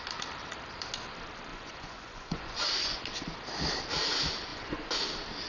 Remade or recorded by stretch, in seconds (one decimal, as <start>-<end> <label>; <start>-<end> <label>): 0.0-1.5 recorded; 1.5-3.0 remade; 3.0-4.5 recorded; 4.5-5.0 remade; 5.0-5.5 recorded

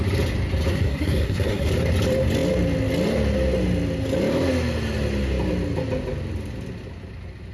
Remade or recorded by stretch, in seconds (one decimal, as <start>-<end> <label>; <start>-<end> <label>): 0.0-0.7 recorded; 0.7-1.7 remade; 1.7-7.5 recorded